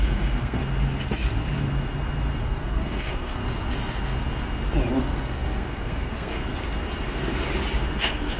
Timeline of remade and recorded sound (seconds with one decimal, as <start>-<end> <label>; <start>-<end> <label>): 0.0-0.6 remade; 0.6-2.4 recorded; 2.4-3.4 remade; 3.4-5.0 recorded; 5.0-6.3 remade; 6.3-8.0 recorded; 8.0-8.4 remade